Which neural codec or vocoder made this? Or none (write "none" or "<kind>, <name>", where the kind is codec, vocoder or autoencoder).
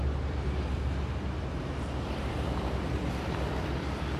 vocoder, BigVGAN v2